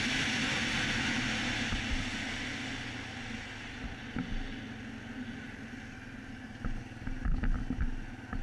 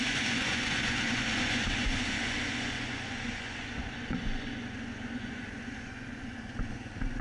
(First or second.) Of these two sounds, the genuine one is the first